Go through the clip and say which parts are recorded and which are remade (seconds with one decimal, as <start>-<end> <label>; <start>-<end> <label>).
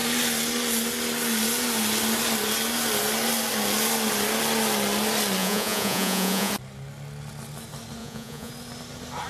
0.0-5.4 recorded; 5.4-6.5 remade; 6.5-8.0 recorded; 8.0-8.5 remade; 8.5-9.3 recorded